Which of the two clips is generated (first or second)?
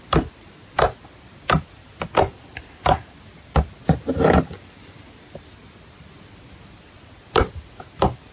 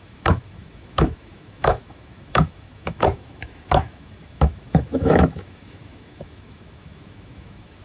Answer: second